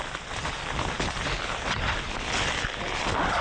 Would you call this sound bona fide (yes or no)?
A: yes